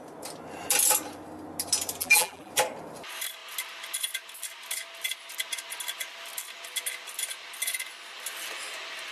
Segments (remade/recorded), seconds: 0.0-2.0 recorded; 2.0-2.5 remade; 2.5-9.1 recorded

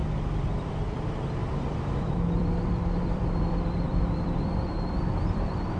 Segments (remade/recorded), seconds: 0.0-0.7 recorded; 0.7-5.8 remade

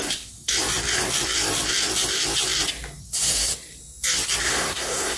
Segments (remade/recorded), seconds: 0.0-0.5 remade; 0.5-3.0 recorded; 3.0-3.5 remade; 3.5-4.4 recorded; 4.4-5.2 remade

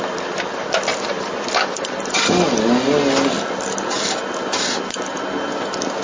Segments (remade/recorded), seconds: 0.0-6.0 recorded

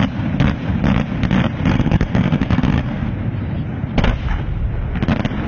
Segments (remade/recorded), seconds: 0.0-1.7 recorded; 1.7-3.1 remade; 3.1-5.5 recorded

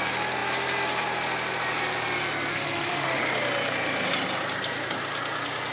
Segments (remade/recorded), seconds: 0.0-2.5 recorded; 2.5-3.2 remade; 3.2-5.7 recorded

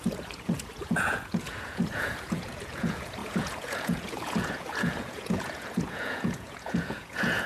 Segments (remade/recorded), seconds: 0.0-7.5 remade